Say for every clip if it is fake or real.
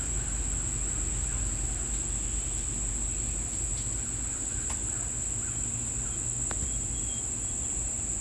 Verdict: real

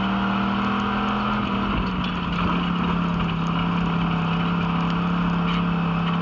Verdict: real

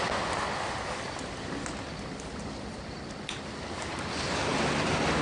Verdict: real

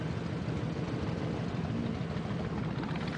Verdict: real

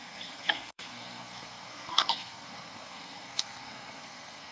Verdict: fake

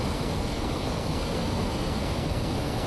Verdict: fake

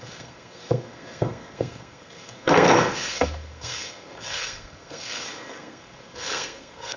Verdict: fake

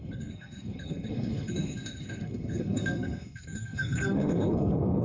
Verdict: fake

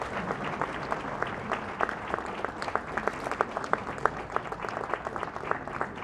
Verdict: real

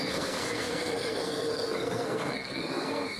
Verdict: fake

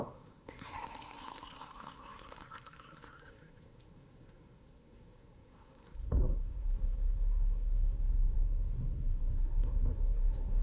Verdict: fake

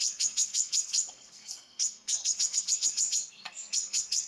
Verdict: fake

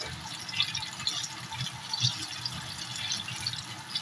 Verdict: real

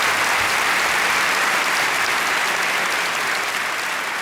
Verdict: real